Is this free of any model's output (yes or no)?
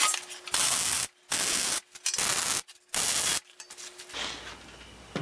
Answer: yes